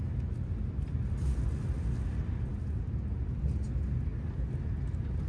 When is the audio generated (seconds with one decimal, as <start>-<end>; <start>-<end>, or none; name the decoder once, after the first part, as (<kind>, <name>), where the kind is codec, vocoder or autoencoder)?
none